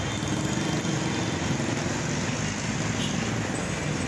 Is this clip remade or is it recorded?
recorded